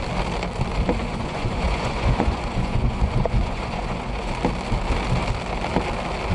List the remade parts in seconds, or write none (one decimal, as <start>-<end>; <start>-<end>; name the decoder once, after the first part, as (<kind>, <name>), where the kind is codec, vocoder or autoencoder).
1.0-4.3 (vocoder, Vocos)